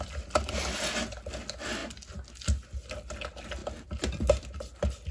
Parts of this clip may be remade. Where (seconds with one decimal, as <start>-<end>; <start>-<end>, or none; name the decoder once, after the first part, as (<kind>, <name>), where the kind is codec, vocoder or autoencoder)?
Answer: none